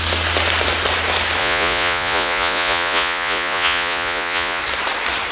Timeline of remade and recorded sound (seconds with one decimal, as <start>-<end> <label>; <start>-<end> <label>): 0.0-1.4 recorded; 1.4-4.6 remade; 4.6-5.3 recorded